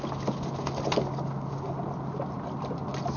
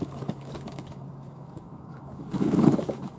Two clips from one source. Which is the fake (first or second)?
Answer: second